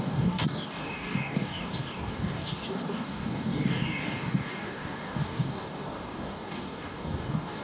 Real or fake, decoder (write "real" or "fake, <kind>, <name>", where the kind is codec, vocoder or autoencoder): fake, codec, DAC